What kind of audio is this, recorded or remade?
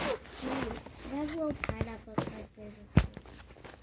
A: recorded